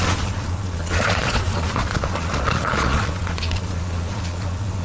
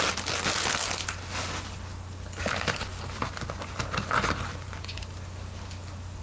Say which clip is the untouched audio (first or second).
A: second